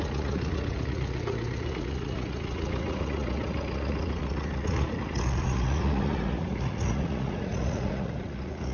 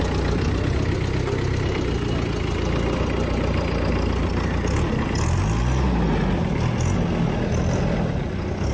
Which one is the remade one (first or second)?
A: first